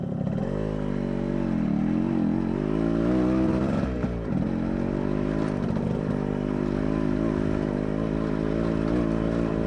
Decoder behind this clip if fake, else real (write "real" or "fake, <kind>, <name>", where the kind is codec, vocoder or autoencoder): real